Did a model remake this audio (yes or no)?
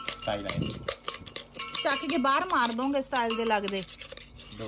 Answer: no